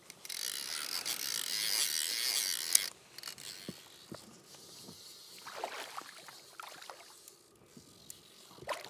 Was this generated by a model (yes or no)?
no